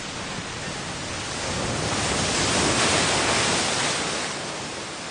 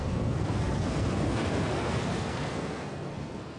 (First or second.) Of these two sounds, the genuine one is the first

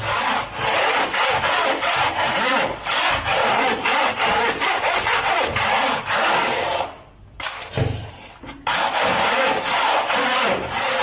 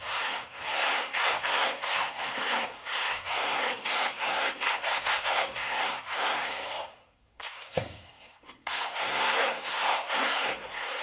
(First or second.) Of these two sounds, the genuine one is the first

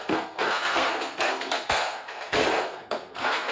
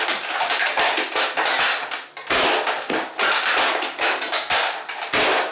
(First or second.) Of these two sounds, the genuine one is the second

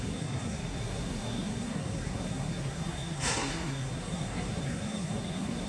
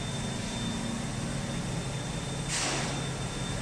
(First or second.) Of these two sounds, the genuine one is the second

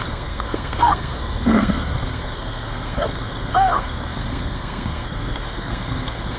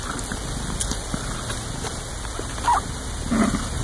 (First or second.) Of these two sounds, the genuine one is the second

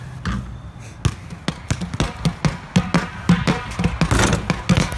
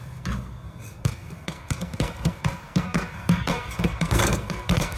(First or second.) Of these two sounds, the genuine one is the first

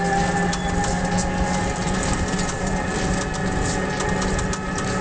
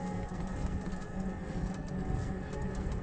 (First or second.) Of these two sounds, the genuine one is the first